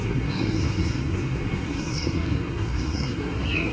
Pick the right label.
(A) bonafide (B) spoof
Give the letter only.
B